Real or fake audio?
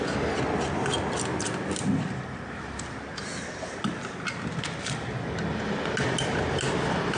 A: real